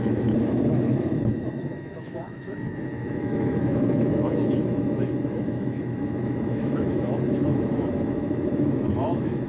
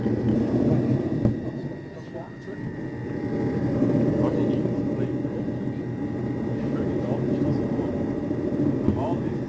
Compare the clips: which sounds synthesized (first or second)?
first